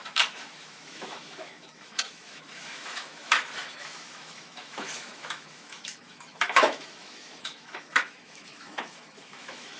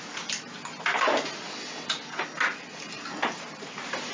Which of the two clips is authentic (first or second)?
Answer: second